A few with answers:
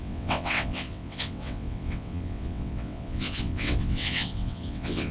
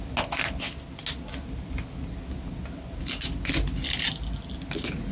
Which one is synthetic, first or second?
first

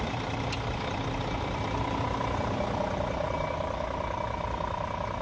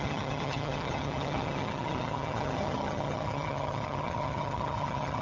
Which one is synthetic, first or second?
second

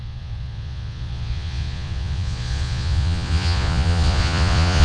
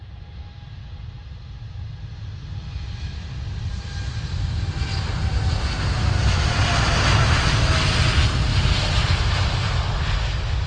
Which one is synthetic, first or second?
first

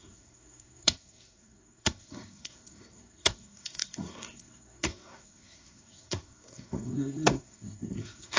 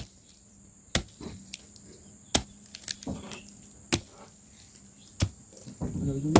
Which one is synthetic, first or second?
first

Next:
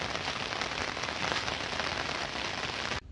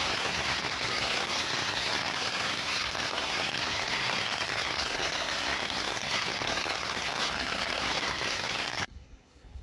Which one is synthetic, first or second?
second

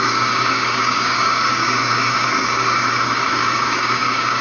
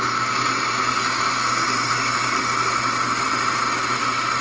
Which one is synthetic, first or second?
first